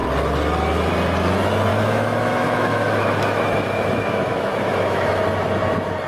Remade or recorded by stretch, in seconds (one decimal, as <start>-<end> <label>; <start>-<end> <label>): 0.0-1.7 recorded; 1.7-5.2 remade; 5.2-6.1 recorded